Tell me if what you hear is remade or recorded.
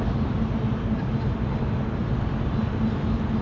recorded